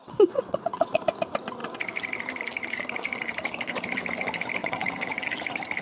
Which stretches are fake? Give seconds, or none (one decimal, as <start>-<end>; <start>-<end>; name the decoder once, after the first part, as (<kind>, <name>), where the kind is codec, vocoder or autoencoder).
0.0-1.0 (vocoder, WaveNeXt); 4.6-5.3